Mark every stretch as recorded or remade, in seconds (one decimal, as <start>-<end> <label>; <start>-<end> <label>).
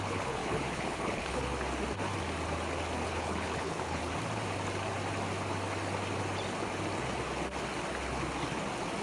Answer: 0.0-1.5 remade; 1.5-3.1 recorded; 3.1-4.0 remade; 4.0-9.0 recorded